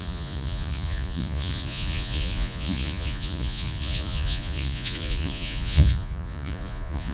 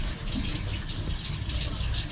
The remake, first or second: first